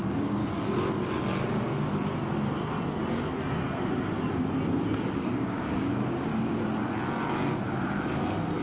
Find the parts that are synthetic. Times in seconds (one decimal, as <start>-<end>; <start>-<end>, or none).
0.0-0.4; 5.2-6.3